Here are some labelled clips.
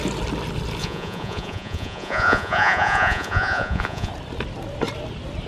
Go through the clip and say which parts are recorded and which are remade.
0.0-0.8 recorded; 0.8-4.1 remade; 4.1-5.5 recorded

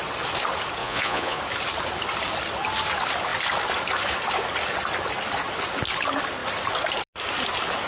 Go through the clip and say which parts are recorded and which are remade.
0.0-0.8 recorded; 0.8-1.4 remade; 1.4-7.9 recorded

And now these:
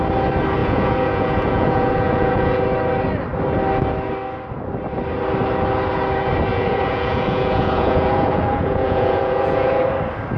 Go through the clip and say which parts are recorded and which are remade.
0.0-0.6 recorded; 0.6-2.6 remade; 2.6-6.5 recorded; 6.5-9.8 remade; 9.8-10.4 recorded

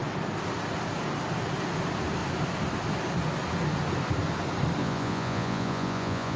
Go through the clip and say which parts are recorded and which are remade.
0.0-4.8 recorded; 4.8-6.4 remade

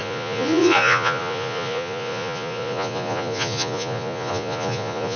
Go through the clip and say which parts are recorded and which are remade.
0.0-5.2 remade

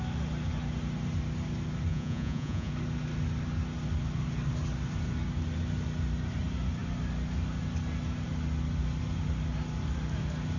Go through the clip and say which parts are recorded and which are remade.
0.0-1.9 recorded; 1.9-2.7 remade; 2.7-10.6 recorded

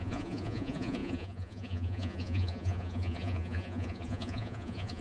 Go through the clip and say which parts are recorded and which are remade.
0.0-5.0 remade

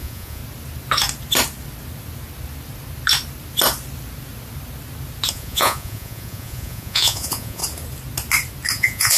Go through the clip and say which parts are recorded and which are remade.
0.0-0.4 remade; 0.4-5.3 recorded; 5.3-7.6 remade; 7.6-8.7 recorded; 8.7-9.2 remade